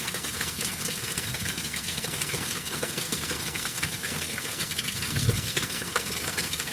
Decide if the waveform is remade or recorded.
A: remade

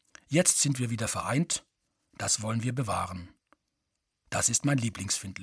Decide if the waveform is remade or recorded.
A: recorded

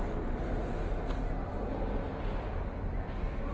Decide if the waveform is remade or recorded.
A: recorded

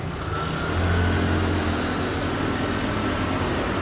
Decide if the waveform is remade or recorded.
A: recorded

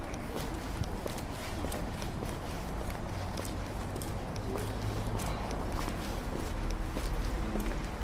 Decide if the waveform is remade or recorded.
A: recorded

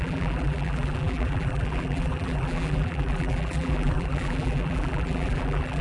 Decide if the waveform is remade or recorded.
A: remade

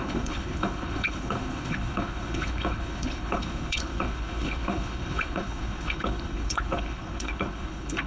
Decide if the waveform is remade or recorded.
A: remade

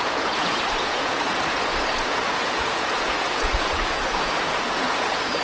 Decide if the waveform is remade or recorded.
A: remade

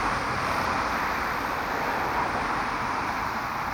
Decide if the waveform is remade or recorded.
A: remade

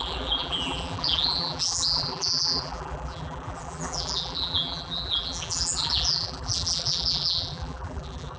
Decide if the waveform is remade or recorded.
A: remade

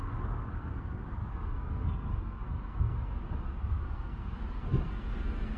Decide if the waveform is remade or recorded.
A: remade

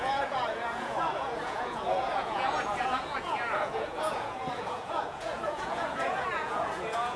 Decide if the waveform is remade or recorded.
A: remade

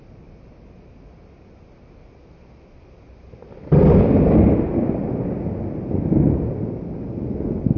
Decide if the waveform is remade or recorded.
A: recorded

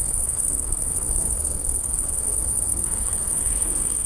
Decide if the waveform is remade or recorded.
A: remade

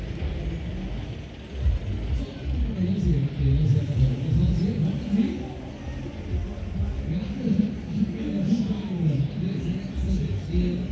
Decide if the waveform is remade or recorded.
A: recorded